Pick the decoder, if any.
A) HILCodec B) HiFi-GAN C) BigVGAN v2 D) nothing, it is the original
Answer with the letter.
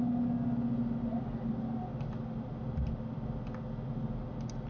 D